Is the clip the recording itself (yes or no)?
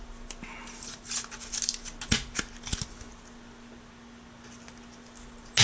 yes